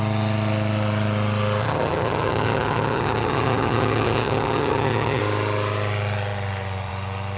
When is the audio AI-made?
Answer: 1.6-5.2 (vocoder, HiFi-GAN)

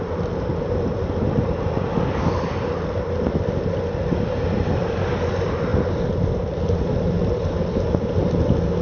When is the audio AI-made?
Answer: none

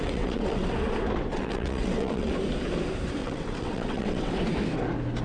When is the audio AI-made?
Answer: 0.0-0.7 (vocoder, WaveNeXt); 1.3-2.3; 3.2-4.3

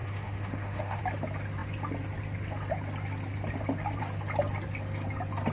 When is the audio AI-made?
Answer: 0.0-1.0 (autoencoder, DAC-VAE)

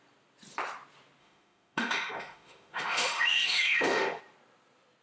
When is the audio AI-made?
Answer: 1.2-4.2 (autoencoder, DAC-VAE)